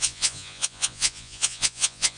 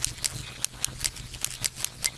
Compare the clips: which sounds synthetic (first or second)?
first